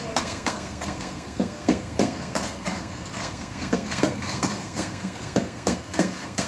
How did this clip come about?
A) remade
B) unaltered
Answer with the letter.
A